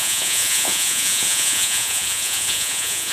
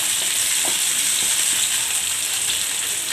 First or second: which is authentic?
second